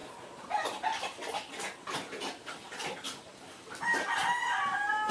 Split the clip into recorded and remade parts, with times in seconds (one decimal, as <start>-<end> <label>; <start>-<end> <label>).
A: 0.0-5.1 recorded